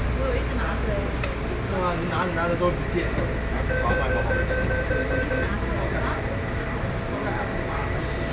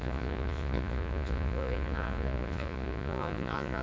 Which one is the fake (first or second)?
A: second